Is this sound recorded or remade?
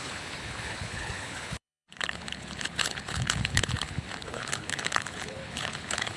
remade